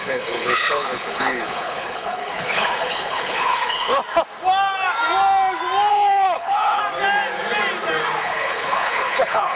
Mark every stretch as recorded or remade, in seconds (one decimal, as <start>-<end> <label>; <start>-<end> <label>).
0.0-4.0 remade; 4.0-5.9 recorded; 5.9-6.8 remade; 6.8-8.2 recorded; 8.2-9.6 remade